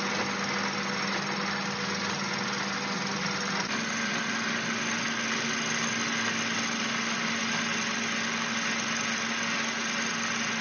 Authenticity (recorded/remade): recorded